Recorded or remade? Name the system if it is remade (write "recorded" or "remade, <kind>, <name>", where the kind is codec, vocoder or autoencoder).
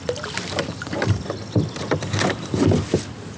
recorded